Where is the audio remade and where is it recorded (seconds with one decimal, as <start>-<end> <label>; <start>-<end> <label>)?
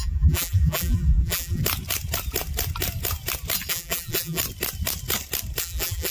0.0-1.6 remade; 1.6-3.7 recorded; 3.7-4.4 remade; 4.4-5.6 recorded; 5.6-6.1 remade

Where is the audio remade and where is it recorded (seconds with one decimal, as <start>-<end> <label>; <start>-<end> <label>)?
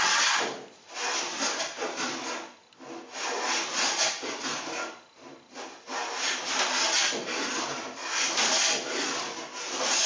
0.0-10.1 recorded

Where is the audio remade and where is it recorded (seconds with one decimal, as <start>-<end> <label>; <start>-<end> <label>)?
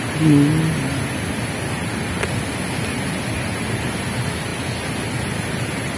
0.0-6.0 recorded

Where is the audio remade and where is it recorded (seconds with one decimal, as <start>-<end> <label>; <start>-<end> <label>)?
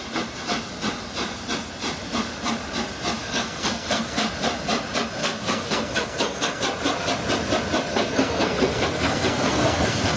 0.0-3.2 recorded; 3.2-4.2 remade; 4.2-5.2 recorded; 5.2-6.6 remade; 6.6-7.9 recorded; 7.9-10.2 remade